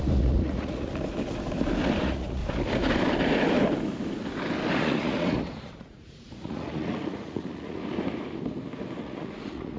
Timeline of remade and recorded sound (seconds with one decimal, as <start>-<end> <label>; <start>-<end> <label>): 0.0-0.9 remade; 0.9-2.0 recorded; 2.0-2.4 remade; 2.4-4.8 recorded; 4.8-7.8 remade; 7.8-9.0 recorded; 9.0-9.8 remade